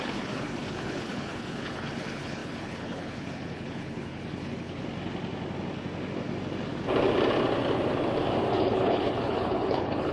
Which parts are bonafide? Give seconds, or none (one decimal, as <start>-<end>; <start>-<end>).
4.8-8.5